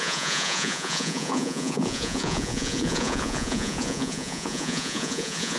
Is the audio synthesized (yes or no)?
yes